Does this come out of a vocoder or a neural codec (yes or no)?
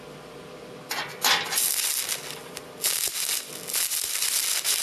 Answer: no